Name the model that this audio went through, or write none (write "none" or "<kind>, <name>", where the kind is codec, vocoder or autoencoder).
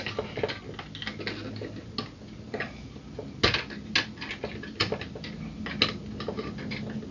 none